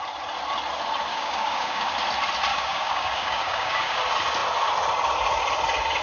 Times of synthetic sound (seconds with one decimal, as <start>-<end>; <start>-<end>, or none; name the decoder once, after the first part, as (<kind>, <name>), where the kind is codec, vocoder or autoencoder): 1.1-1.9 (codec, DAC); 2.5-4.0